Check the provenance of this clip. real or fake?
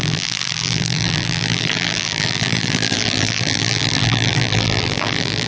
fake